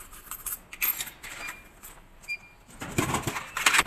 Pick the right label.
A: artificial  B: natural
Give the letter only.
B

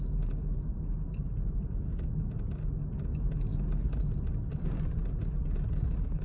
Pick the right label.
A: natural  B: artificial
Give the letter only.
A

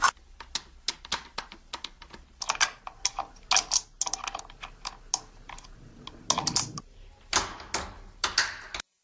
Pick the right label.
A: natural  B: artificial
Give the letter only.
A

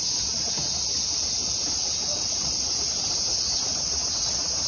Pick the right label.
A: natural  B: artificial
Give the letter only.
A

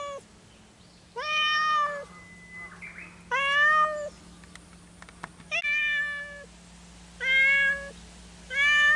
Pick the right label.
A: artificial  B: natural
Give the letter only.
B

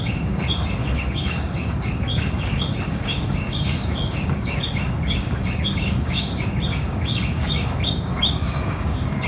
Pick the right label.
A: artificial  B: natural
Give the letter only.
A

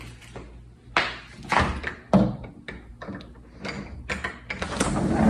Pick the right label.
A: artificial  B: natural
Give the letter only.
B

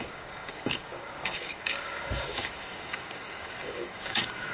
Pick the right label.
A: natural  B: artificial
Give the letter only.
B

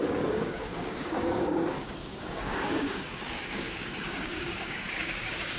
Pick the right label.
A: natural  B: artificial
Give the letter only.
B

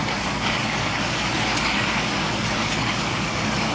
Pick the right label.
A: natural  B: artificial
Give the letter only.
B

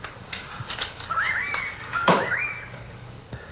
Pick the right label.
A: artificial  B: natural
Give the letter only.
A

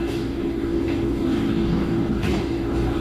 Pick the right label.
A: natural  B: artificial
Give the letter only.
B